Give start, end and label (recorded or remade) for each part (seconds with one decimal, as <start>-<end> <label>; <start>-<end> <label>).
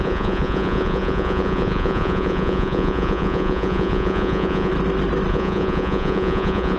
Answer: 0.0-4.7 remade; 4.7-5.3 recorded; 5.3-6.8 remade